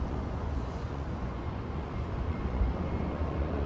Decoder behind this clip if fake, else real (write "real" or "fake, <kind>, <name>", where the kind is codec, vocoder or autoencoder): fake, vocoder, Vocos